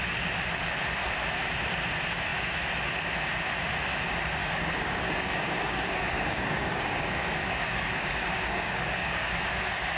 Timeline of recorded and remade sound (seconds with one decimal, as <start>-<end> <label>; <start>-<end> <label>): 0.0-4.4 recorded; 4.4-9.3 remade; 9.3-10.0 recorded

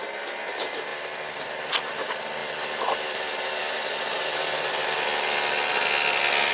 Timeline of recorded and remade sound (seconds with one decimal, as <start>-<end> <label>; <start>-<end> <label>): 0.0-0.9 recorded; 0.9-1.4 remade; 1.4-2.4 recorded; 2.4-5.7 remade; 5.7-6.5 recorded

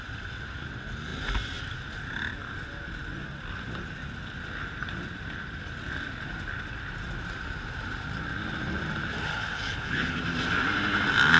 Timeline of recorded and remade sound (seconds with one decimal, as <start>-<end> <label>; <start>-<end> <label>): 0.0-9.3 recorded; 9.3-10.2 remade; 10.2-11.4 recorded

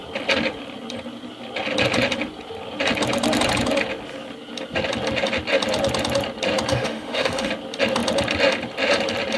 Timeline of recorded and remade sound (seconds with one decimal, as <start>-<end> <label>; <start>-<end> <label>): 0.0-6.7 recorded; 6.7-7.5 remade; 7.5-9.4 recorded